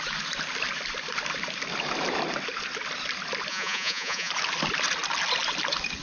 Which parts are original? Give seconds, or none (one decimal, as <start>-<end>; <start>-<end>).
0.0-3.5; 4.3-6.0